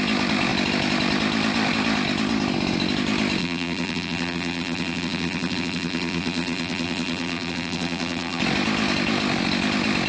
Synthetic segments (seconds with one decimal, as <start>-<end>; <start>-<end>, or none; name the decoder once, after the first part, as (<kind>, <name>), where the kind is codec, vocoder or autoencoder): 3.4-8.4 (vocoder, BigVGAN v2)